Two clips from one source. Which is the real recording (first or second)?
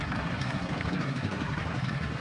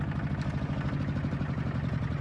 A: second